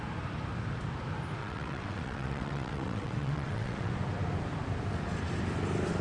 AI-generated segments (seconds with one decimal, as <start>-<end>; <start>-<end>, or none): 1.4-3.9